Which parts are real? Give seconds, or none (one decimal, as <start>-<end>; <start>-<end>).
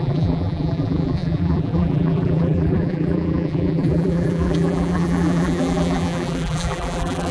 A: none